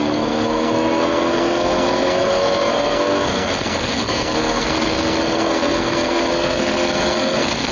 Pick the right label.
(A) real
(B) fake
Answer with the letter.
B